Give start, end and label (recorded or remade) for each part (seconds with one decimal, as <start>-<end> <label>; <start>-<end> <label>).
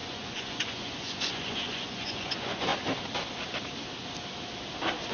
0.0-2.7 remade; 2.7-5.1 recorded